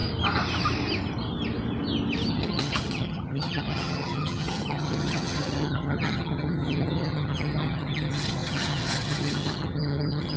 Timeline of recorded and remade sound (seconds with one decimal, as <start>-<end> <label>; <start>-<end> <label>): 0.0-2.3 recorded; 2.3-10.4 remade